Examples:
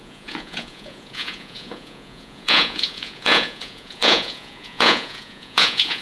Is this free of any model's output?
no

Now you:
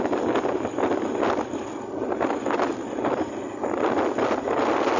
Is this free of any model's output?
yes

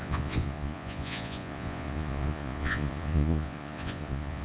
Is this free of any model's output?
no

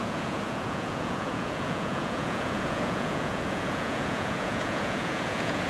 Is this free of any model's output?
no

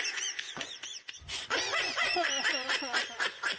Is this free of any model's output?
no